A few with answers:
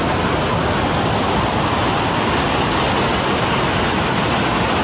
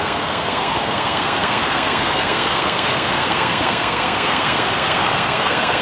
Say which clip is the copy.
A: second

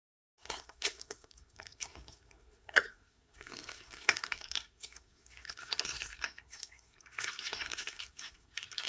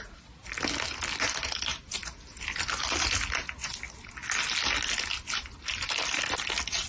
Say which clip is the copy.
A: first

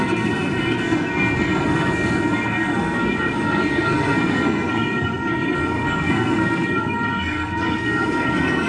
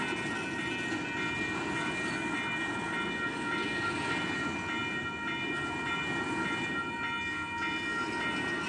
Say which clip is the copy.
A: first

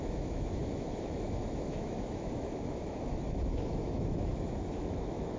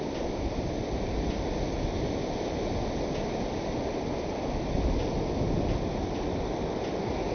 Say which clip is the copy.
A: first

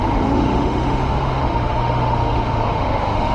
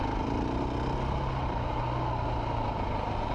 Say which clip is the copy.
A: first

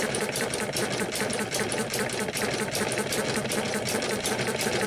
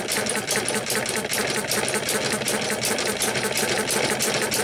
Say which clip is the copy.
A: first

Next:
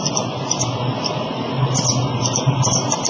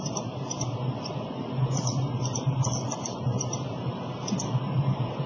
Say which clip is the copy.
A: second